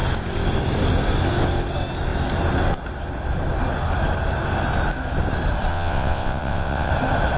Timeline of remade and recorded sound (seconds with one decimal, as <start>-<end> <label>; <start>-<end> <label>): 0.0-5.7 recorded; 5.7-6.9 remade; 6.9-7.4 recorded